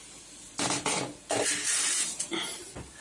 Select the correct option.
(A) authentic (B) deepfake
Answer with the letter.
A